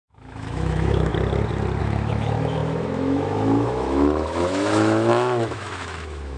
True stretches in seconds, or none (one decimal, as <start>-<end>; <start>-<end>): 1.1-1.8